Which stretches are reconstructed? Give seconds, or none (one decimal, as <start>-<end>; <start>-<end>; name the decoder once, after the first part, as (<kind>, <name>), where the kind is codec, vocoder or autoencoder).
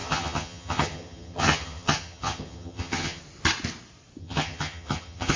0.0-3.2 (vocoder, HiFi-GAN); 4.2-5.4